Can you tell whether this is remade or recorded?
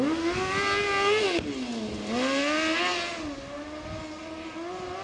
recorded